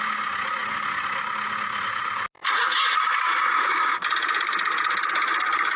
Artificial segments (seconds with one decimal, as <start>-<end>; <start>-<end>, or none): none